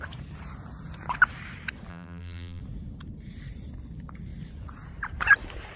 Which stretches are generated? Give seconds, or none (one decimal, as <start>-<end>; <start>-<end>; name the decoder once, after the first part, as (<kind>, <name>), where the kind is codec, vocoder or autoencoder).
1.9-2.6 (vocoder, BigVGAN v2)